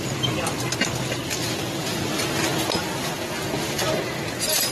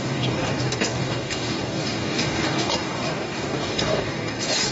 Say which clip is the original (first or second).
first